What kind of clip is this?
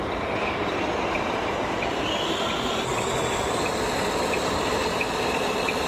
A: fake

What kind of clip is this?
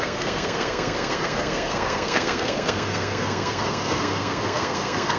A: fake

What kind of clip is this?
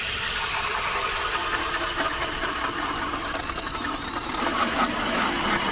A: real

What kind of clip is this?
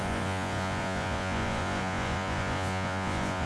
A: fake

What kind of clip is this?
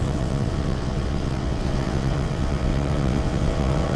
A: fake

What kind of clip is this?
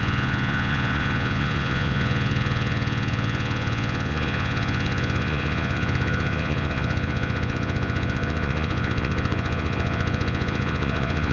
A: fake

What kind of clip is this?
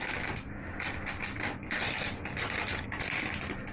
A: real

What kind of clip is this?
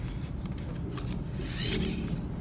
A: real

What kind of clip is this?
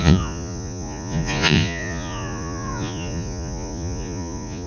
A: fake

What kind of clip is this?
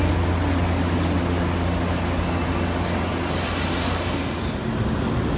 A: real